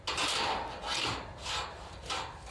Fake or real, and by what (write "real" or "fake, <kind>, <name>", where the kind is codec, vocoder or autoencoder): real